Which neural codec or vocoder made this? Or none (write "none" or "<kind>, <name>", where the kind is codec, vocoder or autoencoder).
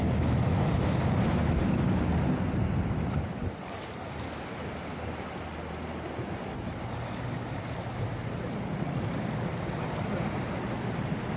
vocoder, BigVGAN v2